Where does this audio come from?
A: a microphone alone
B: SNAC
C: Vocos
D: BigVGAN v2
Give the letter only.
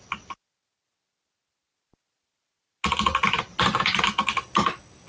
A